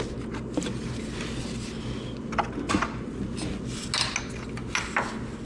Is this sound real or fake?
real